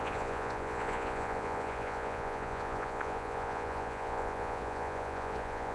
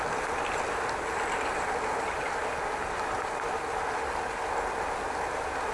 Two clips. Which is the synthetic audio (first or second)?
first